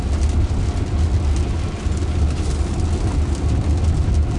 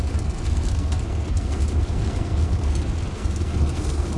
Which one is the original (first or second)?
first